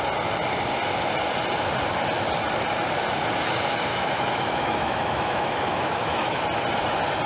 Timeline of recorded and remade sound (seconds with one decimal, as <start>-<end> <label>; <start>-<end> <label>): 0.0-3.9 recorded; 3.9-6.4 remade; 6.4-7.3 recorded